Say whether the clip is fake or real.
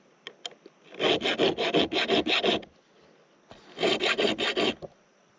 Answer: real